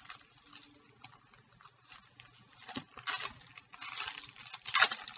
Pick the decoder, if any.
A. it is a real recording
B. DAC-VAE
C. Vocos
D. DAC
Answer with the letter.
A